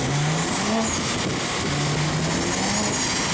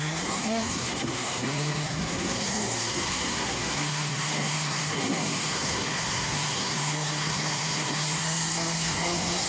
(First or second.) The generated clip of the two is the second